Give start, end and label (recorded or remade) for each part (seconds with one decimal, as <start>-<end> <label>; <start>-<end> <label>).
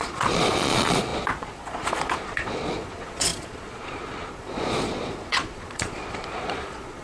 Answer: 0.0-7.0 remade